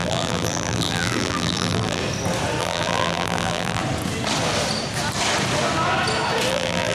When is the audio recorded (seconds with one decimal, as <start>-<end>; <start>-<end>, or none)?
2.0-2.6; 3.8-6.5

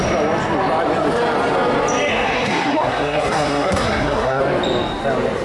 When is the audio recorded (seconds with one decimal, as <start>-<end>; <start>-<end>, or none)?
0.0-2.1; 4.4-5.4